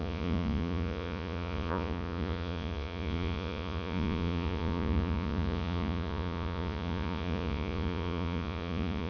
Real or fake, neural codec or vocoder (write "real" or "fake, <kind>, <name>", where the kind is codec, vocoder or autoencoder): fake, vocoder, Vocos